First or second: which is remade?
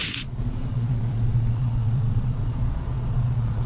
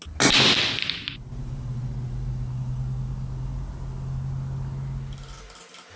first